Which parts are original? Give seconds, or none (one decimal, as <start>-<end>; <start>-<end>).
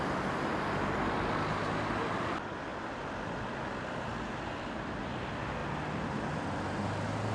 0.0-7.3